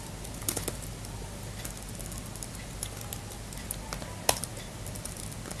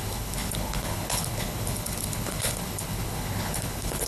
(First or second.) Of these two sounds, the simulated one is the second